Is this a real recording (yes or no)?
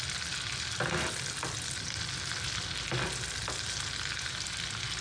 yes